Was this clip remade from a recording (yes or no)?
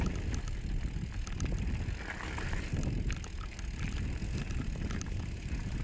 no